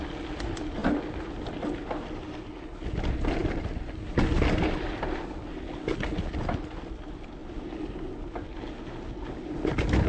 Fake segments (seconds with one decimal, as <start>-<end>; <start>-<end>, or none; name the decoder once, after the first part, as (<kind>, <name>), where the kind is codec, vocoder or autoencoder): none